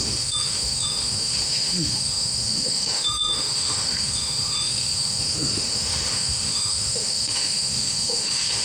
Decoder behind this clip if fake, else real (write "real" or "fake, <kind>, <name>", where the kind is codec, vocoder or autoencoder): fake, autoencoder, DAC-VAE